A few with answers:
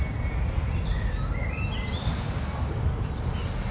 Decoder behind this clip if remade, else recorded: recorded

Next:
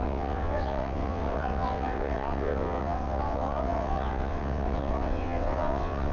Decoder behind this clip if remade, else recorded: remade, vocoder, WaveNeXt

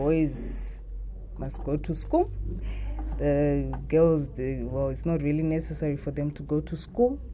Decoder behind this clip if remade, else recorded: recorded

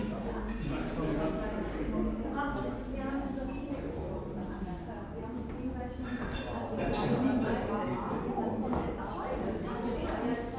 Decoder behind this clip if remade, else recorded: recorded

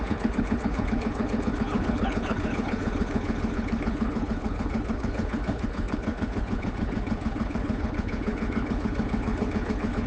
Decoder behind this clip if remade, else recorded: remade, codec, HILCodec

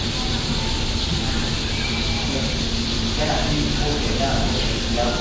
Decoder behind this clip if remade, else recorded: recorded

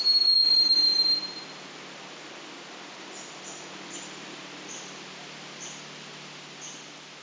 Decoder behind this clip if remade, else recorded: recorded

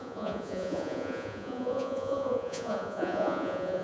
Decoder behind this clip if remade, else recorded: remade, vocoder, Vocos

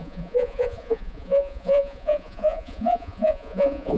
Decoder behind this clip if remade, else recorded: remade, vocoder, Vocos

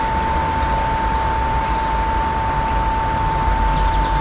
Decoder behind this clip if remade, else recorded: recorded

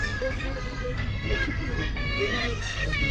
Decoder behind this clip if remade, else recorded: remade, codec, SNAC